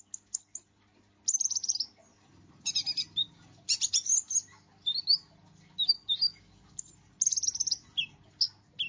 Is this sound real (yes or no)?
yes